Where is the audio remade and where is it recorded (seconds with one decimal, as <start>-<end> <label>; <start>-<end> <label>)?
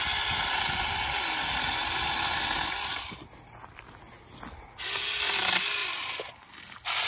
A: 0.0-1.8 recorded; 1.8-4.6 remade; 4.6-7.1 recorded